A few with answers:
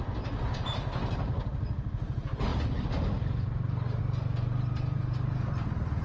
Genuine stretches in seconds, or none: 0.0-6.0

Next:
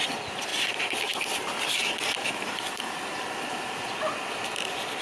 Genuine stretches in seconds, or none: 0.0-5.0

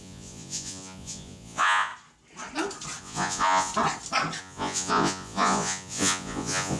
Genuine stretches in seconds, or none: 1.9-3.0; 3.7-4.4

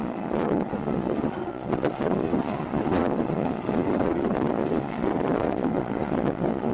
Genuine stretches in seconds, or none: none

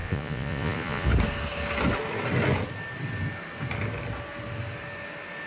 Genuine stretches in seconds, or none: 1.1-5.5

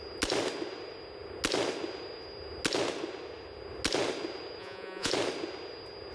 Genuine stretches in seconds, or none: 0.0-4.6; 5.1-6.1